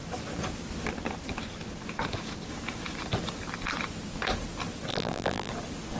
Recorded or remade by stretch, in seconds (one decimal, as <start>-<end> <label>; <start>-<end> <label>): 0.0-4.9 recorded; 4.9-5.5 remade; 5.5-6.0 recorded